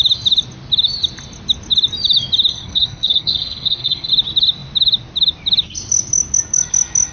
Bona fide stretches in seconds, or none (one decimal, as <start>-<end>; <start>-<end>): 0.0-2.5; 4.1-7.1